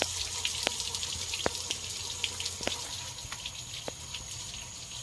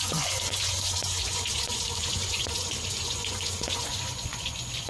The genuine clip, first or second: first